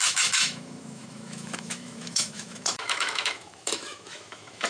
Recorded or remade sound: remade